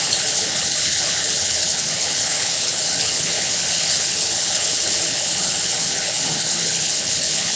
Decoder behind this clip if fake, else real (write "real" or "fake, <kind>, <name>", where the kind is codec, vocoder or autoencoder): fake, codec, HILCodec